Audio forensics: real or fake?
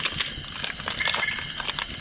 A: real